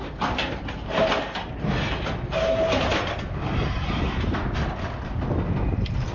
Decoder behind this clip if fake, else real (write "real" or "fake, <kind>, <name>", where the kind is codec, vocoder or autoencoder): real